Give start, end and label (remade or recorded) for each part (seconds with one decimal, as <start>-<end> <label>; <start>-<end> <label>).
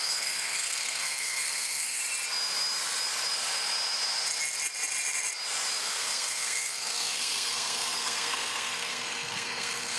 0.0-2.0 remade; 2.0-5.8 recorded; 5.8-10.0 remade